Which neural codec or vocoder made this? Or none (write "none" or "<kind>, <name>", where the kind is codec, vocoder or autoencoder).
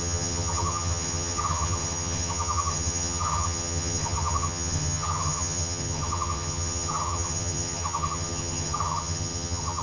vocoder, HiFi-GAN